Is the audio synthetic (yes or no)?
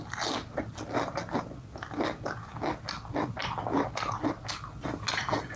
no